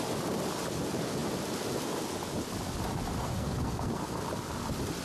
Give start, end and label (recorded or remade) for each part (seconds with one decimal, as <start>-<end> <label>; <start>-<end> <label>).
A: 0.0-3.2 recorded; 3.2-4.2 remade; 4.2-5.0 recorded